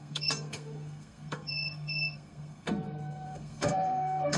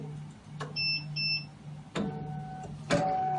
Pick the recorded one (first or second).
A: second